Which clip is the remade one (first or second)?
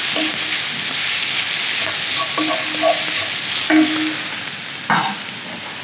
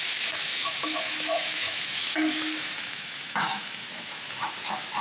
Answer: second